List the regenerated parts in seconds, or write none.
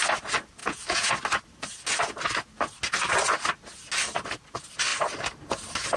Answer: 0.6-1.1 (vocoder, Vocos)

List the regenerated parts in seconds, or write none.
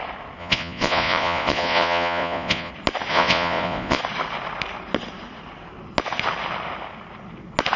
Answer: 0.4-2.7 (vocoder, Vocos); 3.1-4.0